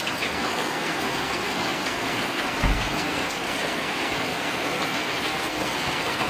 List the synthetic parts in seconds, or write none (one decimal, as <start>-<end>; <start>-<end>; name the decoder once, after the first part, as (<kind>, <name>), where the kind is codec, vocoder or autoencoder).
0.0-6.3 (codec, SNAC)